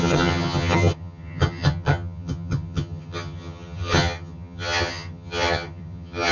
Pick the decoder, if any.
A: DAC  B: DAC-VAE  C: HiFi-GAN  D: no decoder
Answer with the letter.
C